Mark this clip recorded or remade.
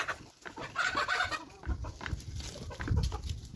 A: recorded